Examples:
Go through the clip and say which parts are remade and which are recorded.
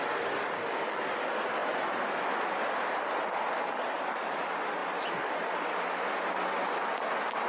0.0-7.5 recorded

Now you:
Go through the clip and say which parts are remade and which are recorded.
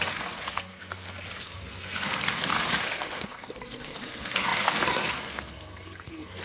0.0-6.4 remade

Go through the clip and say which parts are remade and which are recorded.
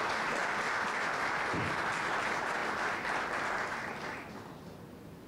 0.0-0.4 remade; 0.4-2.1 recorded; 2.1-2.6 remade; 2.6-5.3 recorded